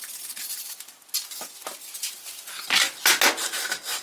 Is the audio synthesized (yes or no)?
no